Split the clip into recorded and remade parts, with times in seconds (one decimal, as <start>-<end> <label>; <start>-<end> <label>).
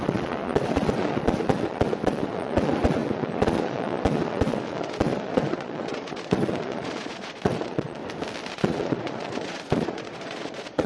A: 0.0-8.0 remade; 8.0-8.5 recorded; 8.5-10.9 remade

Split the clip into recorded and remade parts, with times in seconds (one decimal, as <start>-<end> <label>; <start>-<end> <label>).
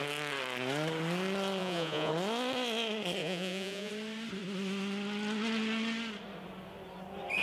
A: 0.0-1.6 recorded; 1.6-2.1 remade; 2.1-3.2 recorded; 3.2-3.9 remade; 3.9-7.4 recorded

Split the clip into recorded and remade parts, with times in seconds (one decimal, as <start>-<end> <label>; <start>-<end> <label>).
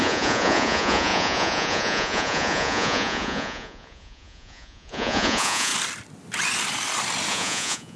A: 0.0-5.7 remade; 5.7-7.3 recorded; 7.3-8.0 remade